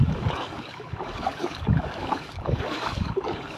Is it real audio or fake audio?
fake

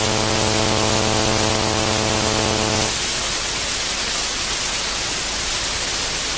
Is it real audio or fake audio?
real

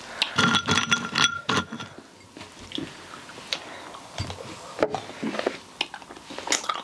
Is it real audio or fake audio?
real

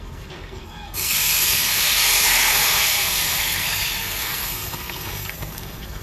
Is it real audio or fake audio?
fake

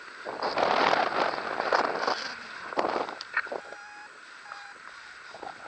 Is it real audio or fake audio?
fake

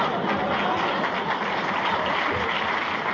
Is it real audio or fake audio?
real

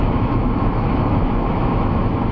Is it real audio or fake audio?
fake